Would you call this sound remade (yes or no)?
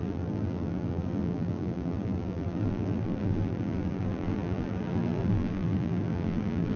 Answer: yes